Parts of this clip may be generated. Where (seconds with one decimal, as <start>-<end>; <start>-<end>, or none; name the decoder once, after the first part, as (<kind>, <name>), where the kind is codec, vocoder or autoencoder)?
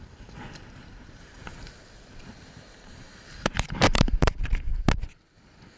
0.0-1.5 (vocoder, BigVGAN v2); 2.5-4.7